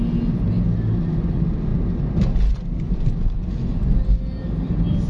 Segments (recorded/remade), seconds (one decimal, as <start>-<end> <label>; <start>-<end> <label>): 0.0-5.1 recorded